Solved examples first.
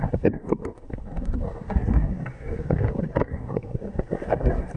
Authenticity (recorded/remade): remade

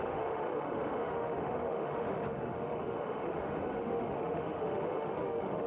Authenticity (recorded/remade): remade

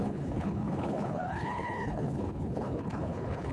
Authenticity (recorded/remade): remade